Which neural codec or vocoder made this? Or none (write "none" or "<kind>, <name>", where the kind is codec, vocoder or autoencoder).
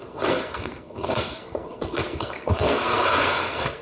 codec, SNAC